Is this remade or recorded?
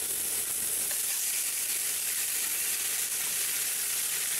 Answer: remade